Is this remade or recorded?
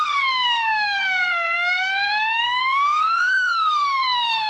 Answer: remade